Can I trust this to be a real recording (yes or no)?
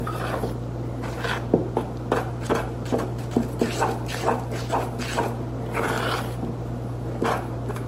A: yes